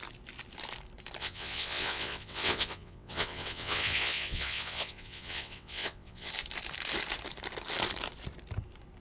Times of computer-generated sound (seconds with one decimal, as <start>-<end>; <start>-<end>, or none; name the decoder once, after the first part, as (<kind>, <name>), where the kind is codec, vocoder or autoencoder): 1.2-6.3 (vocoder, WaveNeXt)